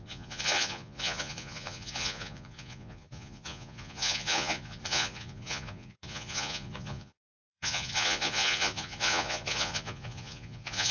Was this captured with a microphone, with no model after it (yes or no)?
no